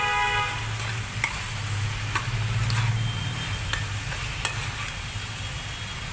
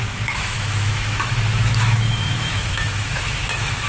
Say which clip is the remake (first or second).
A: second